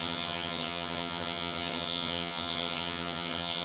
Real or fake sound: fake